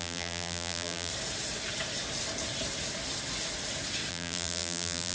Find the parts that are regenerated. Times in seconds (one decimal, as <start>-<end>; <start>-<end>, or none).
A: 0.0-1.1; 4.1-5.1